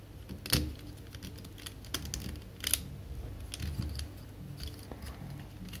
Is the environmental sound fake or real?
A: real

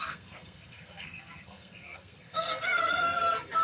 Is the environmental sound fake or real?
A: fake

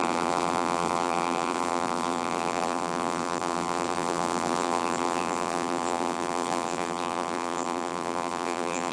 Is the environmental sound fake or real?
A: fake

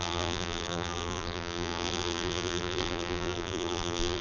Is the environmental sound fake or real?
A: fake